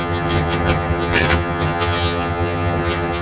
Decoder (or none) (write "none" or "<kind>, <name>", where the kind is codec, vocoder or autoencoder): vocoder, HiFi-GAN